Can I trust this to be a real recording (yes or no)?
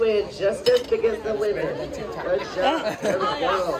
yes